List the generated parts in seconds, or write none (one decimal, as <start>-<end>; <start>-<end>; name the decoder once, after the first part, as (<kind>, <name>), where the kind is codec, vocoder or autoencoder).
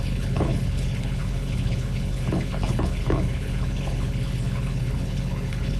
0.0-5.8 (codec, HILCodec)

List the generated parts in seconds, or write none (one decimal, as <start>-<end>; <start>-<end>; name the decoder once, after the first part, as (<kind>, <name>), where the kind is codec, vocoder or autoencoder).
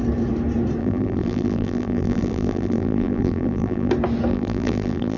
0.8-3.9 (vocoder, BigVGAN v2); 4.3-5.2